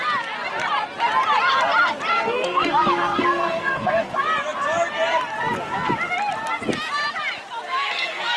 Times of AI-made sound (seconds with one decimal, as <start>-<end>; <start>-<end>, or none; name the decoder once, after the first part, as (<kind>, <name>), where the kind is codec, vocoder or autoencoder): 2.1-4.1 (codec, SNAC); 7.7-8.4